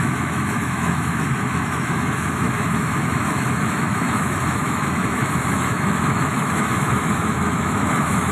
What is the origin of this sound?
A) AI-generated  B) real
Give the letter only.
A